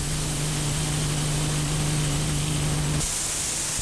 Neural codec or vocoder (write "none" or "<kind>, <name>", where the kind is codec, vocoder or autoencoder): none